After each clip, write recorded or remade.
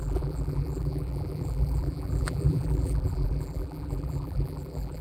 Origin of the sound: remade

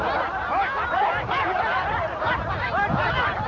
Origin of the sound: recorded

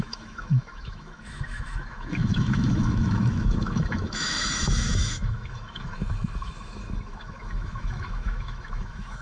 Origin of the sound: remade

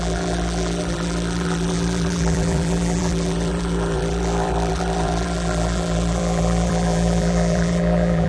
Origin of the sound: remade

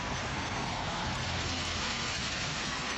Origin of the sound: remade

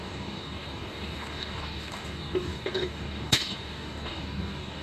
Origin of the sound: remade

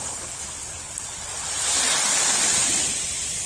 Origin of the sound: remade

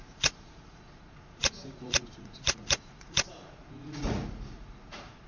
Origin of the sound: remade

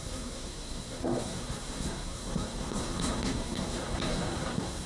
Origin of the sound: remade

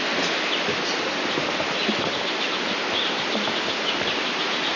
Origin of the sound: recorded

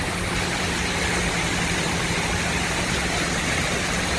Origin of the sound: recorded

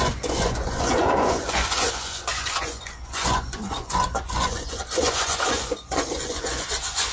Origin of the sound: remade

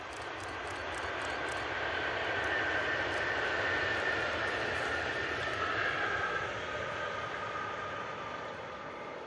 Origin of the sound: recorded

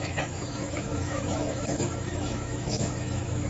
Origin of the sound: remade